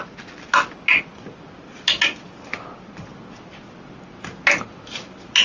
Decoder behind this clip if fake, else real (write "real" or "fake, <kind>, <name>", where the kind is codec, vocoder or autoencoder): real